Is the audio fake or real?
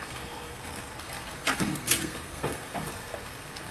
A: fake